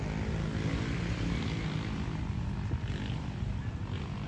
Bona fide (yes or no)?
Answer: yes